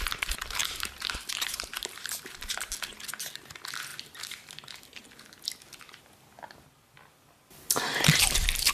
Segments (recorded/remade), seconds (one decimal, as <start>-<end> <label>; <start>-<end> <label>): 0.0-0.6 recorded; 0.6-2.6 remade; 2.6-8.7 recorded